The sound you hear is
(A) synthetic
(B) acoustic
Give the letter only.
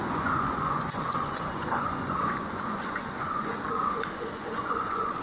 A